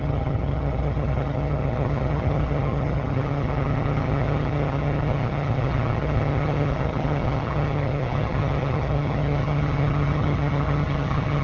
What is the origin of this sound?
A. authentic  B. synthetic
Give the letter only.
B